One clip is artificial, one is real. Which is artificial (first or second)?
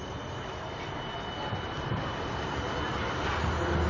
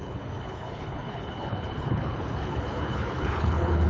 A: second